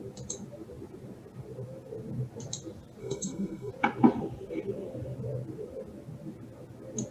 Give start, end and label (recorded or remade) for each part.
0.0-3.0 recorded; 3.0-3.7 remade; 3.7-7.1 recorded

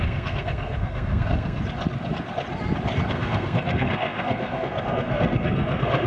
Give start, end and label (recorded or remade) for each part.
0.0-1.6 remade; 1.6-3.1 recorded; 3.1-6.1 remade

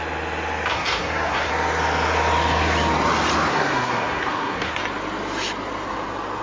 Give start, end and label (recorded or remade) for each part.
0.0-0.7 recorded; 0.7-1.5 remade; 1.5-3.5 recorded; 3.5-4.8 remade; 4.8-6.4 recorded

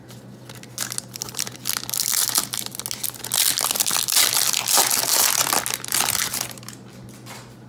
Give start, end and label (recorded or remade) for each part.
0.0-7.7 recorded